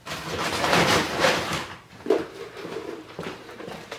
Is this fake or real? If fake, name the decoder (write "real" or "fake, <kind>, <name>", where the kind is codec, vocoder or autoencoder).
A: fake, vocoder, BigVGAN v2